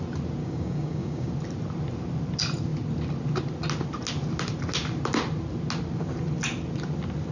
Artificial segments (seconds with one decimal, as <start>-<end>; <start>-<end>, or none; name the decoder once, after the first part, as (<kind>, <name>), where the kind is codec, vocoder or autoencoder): 0.4-1.3 (codec, DAC)